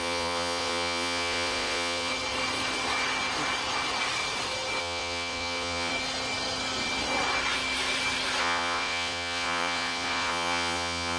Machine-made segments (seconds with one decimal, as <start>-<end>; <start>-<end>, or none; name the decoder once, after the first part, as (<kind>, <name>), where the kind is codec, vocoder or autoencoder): 0.0-2.1 (vocoder, Vocos); 4.8-5.9; 8.4-11.2